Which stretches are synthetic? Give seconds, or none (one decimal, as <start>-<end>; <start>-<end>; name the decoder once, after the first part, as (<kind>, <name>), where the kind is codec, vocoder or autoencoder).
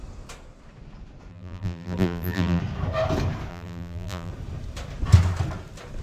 1.3-2.6 (vocoder, BigVGAN v2); 3.5-4.3